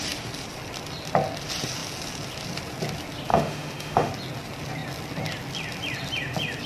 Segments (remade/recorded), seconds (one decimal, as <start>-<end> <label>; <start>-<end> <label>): 0.0-3.3 recorded; 3.3-4.1 remade; 4.1-6.7 recorded